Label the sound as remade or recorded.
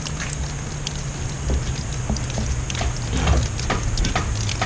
recorded